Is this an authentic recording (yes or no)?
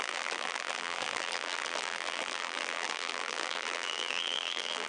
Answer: no